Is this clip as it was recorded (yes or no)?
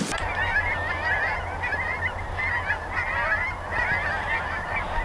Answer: yes